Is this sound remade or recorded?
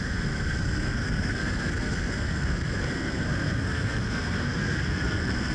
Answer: remade